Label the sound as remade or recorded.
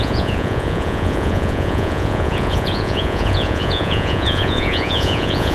remade